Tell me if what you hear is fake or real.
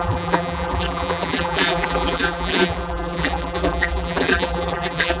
fake